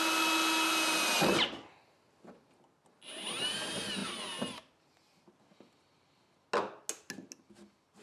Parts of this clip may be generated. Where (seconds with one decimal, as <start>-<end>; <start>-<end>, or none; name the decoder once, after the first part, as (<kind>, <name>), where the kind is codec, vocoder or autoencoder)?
none